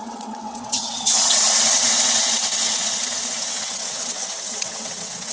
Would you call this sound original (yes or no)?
no